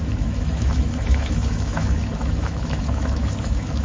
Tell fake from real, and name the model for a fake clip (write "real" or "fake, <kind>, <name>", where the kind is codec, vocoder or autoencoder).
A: fake, autoencoder, DAC-VAE